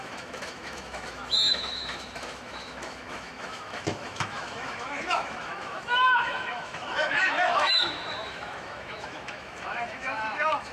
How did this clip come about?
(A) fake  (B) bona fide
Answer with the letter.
A